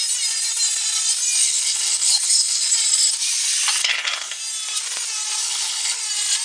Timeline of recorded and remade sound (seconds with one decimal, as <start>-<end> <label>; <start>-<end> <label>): 0.0-1.4 recorded; 1.4-2.7 remade; 2.7-3.8 recorded; 3.8-4.4 remade; 4.4-5.4 recorded; 5.4-6.0 remade; 6.0-6.4 recorded